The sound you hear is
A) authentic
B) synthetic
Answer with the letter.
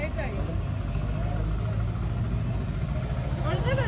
A